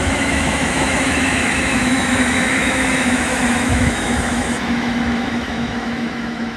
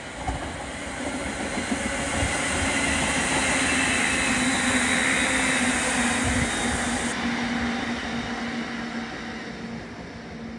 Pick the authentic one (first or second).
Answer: second